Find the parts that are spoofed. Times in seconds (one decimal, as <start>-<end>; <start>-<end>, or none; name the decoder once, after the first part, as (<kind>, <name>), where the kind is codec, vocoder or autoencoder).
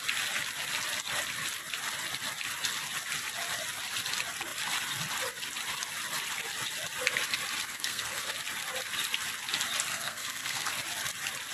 7.7-8.3 (codec, SNAC); 9.9-10.7